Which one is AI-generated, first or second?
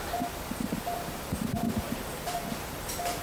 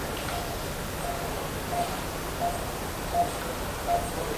first